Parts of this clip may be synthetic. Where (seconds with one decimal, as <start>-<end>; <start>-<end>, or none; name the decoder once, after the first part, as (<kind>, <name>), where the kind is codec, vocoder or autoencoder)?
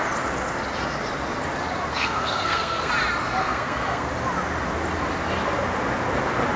1.9-2.9 (codec, SNAC); 3.4-4.1